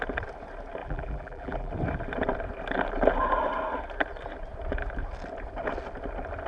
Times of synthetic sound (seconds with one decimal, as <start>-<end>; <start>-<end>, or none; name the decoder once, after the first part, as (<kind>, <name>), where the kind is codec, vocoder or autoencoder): 0.8-1.7 (vocoder, BigVGAN v2)

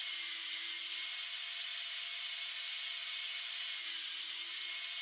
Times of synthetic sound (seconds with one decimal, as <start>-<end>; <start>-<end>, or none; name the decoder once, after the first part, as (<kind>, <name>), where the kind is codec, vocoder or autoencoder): 0.0-1.2 (vocoder, BigVGAN v2); 3.0-3.7